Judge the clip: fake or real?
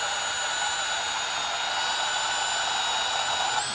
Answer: real